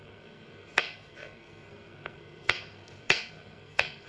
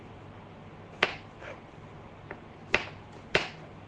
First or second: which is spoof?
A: first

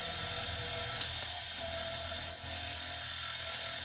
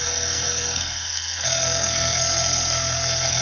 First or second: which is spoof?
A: second